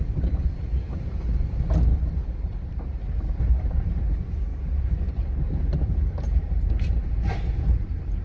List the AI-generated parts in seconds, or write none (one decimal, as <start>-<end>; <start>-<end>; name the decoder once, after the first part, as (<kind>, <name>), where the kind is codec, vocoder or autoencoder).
0.0-8.2 (vocoder, BigVGAN v2)